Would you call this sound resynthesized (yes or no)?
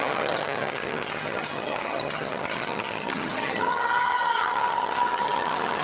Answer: yes